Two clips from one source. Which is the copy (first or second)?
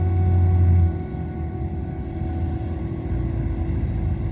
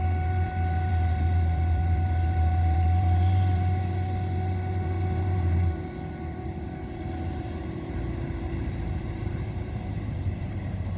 second